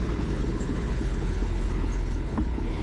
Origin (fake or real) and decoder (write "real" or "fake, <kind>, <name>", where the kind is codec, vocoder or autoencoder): fake, codec, HILCodec